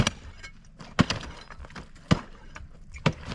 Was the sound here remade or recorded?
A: recorded